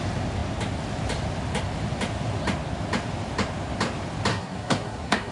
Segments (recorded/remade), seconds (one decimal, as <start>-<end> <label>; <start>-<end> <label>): 0.0-4.3 recorded; 4.3-5.3 remade